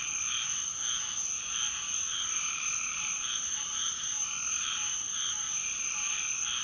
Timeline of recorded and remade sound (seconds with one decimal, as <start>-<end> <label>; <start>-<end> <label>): 0.0-2.1 recorded; 2.1-6.1 remade; 6.1-6.6 recorded